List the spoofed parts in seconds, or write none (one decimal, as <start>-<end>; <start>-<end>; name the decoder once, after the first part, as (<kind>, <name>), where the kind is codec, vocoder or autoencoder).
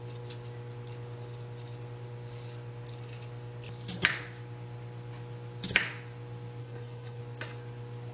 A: 6.6-7.2 (codec, HILCodec)